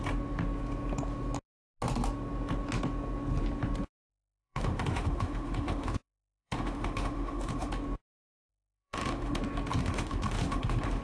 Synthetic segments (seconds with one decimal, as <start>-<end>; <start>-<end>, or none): 4.1-7.7; 8.5-9.4; 9.8-11.0